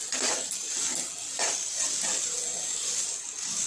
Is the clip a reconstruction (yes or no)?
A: no